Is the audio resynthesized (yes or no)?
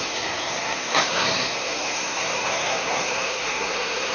yes